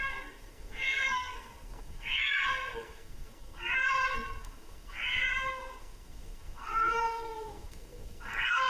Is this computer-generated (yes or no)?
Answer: yes